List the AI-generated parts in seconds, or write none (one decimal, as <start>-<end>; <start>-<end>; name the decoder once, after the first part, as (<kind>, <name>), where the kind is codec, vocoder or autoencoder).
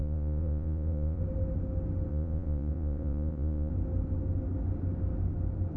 0.0-1.2 (vocoder, Vocos); 2.1-3.7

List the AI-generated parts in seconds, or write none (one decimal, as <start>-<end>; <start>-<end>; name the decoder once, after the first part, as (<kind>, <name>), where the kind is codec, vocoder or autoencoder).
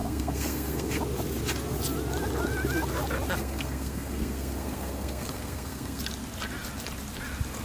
0.0-1.0 (codec, SNAC); 3.4-6.0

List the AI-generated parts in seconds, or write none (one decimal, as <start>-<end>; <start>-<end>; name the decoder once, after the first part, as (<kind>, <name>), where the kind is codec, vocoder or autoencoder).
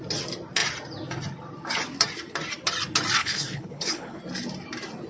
3.2-4.2 (codec, HILCodec)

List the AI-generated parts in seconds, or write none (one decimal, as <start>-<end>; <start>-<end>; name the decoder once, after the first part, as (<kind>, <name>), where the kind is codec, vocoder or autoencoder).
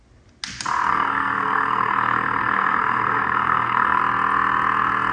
0.9-4.0 (codec, SNAC)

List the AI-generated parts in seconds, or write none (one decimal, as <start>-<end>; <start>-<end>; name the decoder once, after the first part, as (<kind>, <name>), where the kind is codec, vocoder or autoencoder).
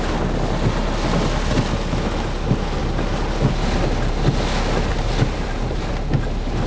4.9-5.9 (vocoder, BigVGAN v2)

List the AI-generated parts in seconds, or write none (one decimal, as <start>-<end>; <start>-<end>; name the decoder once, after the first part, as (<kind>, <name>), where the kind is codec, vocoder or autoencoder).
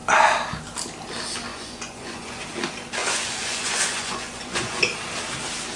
1.5-2.4 (vocoder, Vocos); 3.0-4.8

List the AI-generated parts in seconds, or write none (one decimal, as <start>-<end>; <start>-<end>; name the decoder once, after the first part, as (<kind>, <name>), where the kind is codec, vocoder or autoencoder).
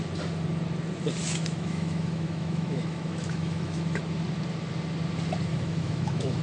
1.2-4.0 (autoencoder, DAC-VAE); 5.5-6.4